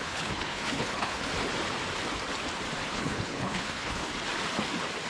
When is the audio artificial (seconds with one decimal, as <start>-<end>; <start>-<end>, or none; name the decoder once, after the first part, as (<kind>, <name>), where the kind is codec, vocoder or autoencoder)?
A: 0.0-1.3 (codec, HILCodec); 2.9-4.1